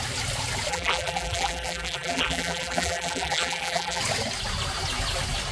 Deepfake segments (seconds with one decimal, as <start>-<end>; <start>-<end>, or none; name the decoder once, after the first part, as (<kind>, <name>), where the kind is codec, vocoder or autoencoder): 0.7-4.0 (vocoder, BigVGAN v2)